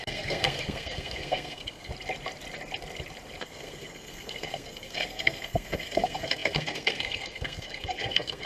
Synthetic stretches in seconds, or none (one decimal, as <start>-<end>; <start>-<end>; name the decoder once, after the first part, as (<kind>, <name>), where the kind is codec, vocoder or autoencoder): 0.0-1.9 (codec, SNAC); 3.4-8.5